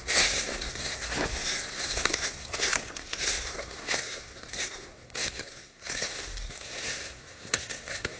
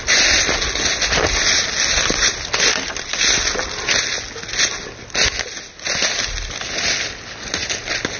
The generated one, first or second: first